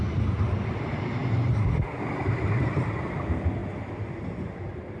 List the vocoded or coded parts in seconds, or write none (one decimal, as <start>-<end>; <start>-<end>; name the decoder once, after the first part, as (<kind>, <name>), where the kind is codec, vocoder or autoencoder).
none